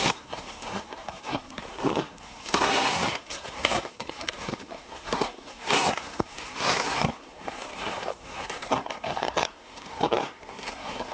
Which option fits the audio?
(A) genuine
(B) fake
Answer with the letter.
B